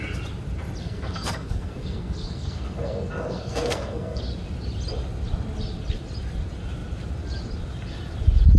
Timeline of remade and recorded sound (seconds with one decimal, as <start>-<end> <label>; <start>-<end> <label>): 0.0-0.8 recorded; 0.8-4.2 remade; 4.2-8.6 recorded